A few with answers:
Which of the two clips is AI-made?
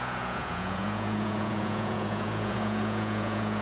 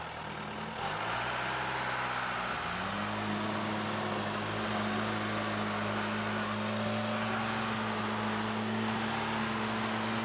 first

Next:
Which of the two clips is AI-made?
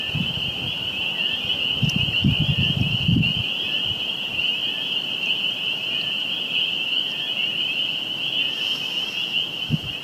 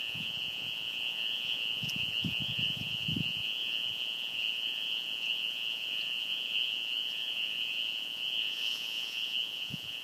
second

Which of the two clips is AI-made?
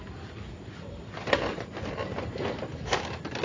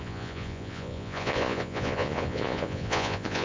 second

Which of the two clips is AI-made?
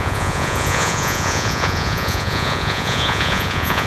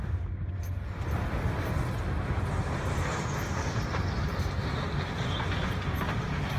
first